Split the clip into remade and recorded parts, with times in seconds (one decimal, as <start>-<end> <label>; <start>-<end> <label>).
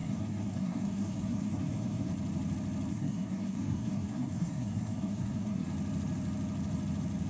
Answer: 0.0-2.1 remade; 2.1-2.9 recorded; 2.9-5.7 remade; 5.7-7.3 recorded